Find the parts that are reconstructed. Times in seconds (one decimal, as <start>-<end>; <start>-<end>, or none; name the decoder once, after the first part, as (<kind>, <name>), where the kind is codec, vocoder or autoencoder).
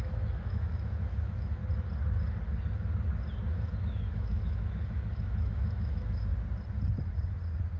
0.0-1.6 (autoencoder, DAC-VAE); 3.8-6.3